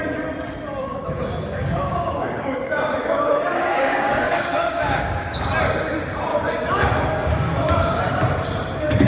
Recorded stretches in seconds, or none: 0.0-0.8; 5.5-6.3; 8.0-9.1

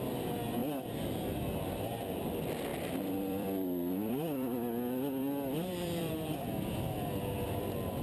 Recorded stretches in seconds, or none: 0.0-2.7; 6.1-8.0

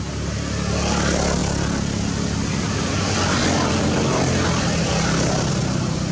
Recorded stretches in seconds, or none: 0.0-6.1

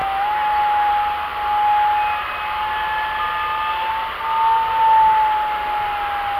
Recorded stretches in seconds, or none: 0.9-6.4